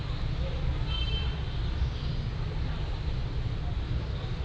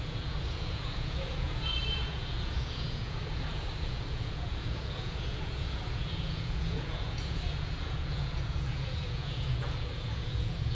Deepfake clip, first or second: second